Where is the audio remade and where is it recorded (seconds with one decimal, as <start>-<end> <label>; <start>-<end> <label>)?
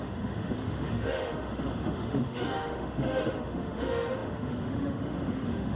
0.0-5.8 remade